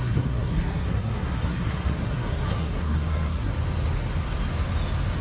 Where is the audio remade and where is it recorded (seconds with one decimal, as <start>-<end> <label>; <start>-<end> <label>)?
0.0-3.5 remade; 3.5-5.2 recorded